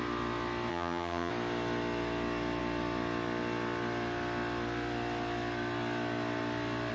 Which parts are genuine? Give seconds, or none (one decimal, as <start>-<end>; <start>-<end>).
0.0-0.7; 1.3-6.9